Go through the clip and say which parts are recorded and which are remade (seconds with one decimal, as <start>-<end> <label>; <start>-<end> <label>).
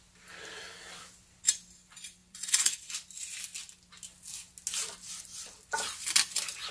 0.0-2.2 recorded; 2.2-2.9 remade; 2.9-6.7 recorded